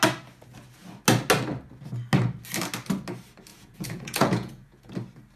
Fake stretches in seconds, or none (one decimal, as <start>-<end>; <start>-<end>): 3.5-4.9